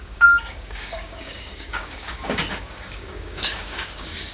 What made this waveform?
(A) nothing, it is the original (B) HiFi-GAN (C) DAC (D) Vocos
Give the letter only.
C